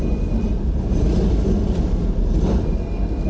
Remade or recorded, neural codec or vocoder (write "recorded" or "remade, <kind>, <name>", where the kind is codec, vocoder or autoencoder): recorded